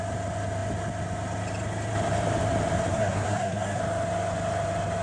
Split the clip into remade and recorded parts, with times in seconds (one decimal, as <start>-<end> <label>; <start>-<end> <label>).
0.0-2.9 recorded; 2.9-3.8 remade; 3.8-5.0 recorded